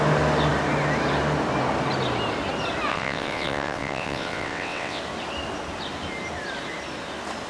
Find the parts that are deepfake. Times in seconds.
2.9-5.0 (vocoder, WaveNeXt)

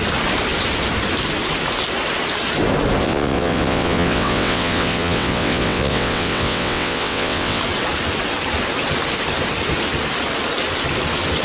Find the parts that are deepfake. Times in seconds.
3.0-7.6 (vocoder, WaveNeXt)